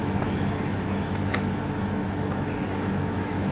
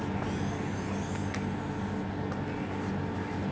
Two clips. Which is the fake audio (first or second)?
first